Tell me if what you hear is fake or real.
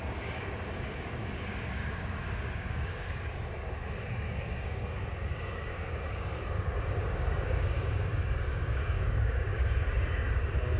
fake